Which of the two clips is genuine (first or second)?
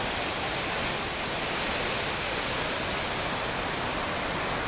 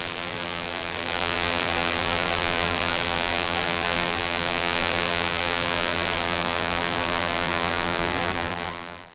first